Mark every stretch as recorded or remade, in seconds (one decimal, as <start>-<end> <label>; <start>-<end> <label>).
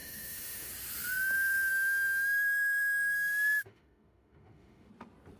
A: 0.0-0.7 remade; 0.7-1.7 recorded; 1.7-4.9 remade; 4.9-5.4 recorded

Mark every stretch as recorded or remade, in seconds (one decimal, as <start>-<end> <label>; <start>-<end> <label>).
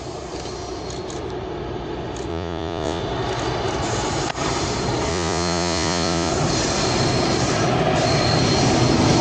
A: 0.0-2.3 recorded; 2.3-3.0 remade; 3.0-5.1 recorded; 5.1-6.3 remade; 6.3-9.2 recorded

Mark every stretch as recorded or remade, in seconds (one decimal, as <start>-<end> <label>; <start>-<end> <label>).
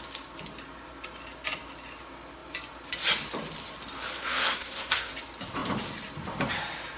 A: 0.0-4.2 recorded; 4.2-5.1 remade; 5.1-7.0 recorded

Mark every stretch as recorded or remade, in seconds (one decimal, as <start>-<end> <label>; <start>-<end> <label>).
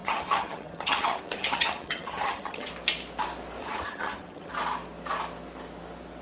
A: 0.0-2.7 remade; 2.7-3.6 recorded; 3.6-4.5 remade; 4.5-6.2 recorded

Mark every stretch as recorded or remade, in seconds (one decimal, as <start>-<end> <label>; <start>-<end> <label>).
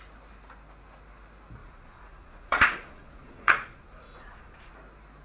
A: 0.0-1.6 recorded; 1.6-4.7 remade; 4.7-5.2 recorded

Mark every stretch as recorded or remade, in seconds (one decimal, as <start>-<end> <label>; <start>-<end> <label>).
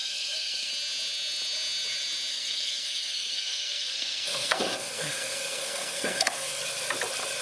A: 0.0-0.7 remade; 0.7-2.3 recorded; 2.3-6.6 remade; 6.6-7.4 recorded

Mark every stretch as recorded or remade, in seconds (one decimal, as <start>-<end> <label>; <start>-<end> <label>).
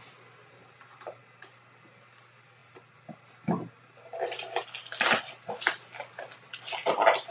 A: 0.0-7.3 recorded